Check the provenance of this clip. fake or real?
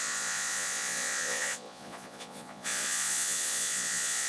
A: fake